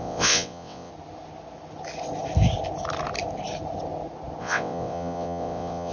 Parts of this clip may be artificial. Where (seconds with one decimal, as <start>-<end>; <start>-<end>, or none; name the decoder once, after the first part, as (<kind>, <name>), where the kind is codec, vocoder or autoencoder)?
0.0-0.9 (vocoder, WaveNeXt); 4.4-5.9